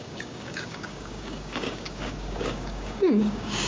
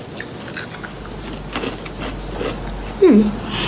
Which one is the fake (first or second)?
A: first